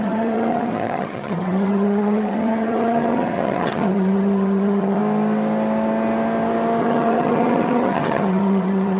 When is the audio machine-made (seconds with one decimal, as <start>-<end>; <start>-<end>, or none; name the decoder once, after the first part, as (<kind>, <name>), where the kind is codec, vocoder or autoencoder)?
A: 0.0-5.0 (vocoder, HiFi-GAN); 6.8-9.0